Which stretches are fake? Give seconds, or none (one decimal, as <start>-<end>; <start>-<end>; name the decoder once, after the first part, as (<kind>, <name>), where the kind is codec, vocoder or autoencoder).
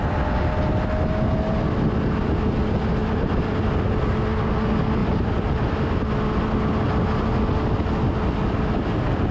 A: 3.0-4.2 (vocoder, BigVGAN v2); 5.0-6.1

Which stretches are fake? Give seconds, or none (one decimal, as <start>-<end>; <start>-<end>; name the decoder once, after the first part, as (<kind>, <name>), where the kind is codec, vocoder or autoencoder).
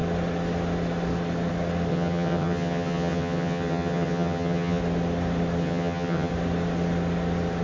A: 1.9-4.8 (vocoder, HiFi-GAN); 5.6-6.3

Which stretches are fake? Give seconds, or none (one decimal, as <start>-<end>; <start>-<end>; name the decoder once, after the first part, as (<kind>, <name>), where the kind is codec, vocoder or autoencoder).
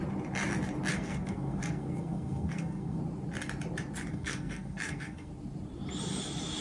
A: 0.9-3.0 (codec, SNAC); 4.1-5.3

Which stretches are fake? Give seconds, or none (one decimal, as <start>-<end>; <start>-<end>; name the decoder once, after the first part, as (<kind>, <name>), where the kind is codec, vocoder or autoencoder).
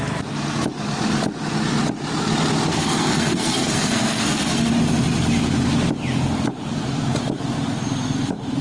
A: 2.7-4.7 (codec, SNAC)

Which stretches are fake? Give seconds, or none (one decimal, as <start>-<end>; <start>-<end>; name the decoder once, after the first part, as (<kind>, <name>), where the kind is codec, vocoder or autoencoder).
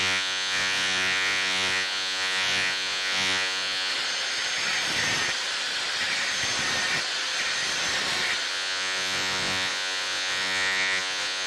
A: 0.0-3.9 (vocoder, Vocos); 8.5-11.5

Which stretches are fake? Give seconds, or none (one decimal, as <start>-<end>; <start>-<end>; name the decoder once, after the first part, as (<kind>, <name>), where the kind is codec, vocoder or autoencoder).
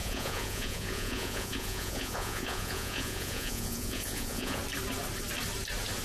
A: 0.0-4.6 (vocoder, Vocos)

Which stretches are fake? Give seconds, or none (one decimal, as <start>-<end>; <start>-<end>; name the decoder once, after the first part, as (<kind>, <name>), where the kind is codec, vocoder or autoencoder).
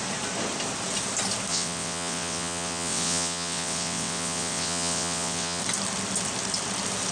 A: 1.5-5.6 (vocoder, WaveNeXt)